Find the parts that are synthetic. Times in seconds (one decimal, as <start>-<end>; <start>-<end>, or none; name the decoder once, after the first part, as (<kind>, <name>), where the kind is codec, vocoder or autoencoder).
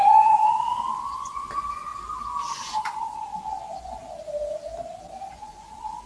0.0-1.9 (vocoder, Vocos); 2.5-4.0; 5.3-6.1